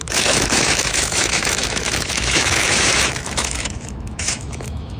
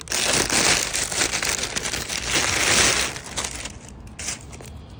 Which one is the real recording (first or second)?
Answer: second